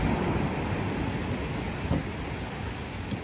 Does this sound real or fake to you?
real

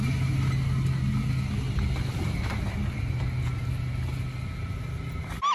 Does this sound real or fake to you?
real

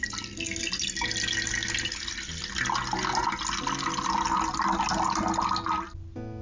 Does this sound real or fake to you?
real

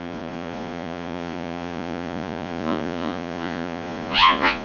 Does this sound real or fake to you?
fake